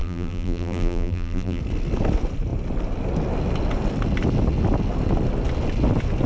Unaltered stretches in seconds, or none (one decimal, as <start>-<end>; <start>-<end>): 1.6-6.3